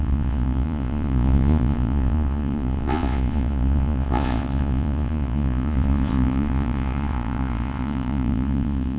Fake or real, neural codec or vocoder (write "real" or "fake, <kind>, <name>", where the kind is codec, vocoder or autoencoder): fake, vocoder, Vocos